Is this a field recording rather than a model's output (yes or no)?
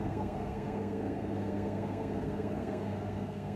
no